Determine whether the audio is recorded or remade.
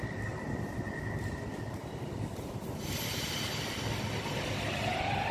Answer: recorded